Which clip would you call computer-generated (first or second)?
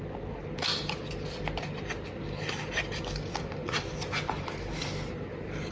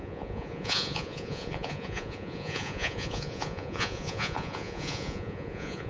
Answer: second